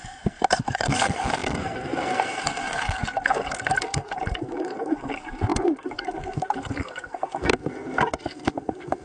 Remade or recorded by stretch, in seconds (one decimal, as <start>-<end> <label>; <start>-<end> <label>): 0.0-9.0 remade